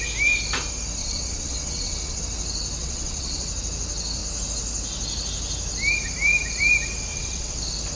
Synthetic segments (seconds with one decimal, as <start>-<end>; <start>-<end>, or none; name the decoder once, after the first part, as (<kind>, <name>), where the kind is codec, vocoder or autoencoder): 1.0-2.2 (vocoder, WaveNeXt); 2.8-3.5; 7.1-7.6